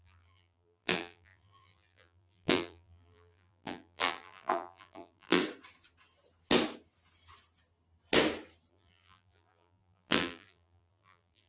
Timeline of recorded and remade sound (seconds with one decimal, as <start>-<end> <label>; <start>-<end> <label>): 0.0-5.4 remade; 5.4-8.7 recorded; 8.7-11.5 remade